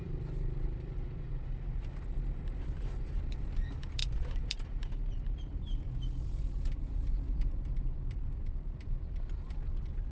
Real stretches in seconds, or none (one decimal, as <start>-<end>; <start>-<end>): none